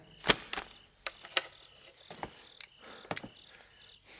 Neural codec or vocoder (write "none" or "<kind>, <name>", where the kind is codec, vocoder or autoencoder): none